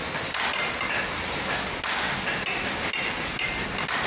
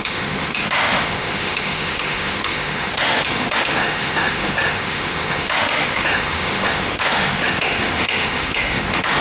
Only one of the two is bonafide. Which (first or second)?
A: first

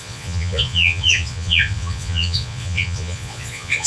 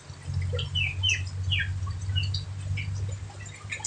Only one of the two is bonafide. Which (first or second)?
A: second